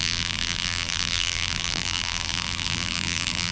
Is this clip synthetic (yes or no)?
yes